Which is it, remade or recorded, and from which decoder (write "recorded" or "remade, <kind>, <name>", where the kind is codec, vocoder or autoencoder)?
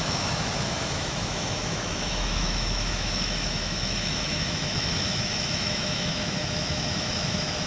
remade, autoencoder, DAC-VAE